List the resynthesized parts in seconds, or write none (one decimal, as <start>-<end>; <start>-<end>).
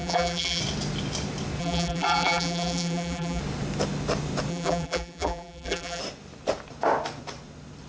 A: 0.0-0.6; 1.6-3.4; 4.5-6.0